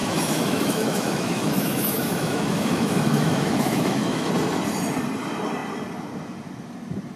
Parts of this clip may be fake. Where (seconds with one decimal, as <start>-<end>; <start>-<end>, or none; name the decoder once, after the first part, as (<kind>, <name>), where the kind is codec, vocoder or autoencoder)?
0.0-4.3 (autoencoder, DAC-VAE)